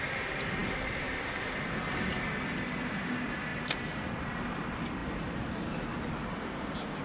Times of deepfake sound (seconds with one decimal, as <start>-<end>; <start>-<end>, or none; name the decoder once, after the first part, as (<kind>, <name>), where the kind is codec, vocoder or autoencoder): none